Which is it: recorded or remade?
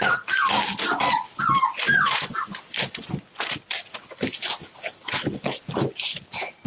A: recorded